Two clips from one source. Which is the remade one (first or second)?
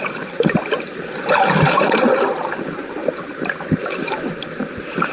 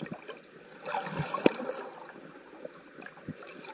first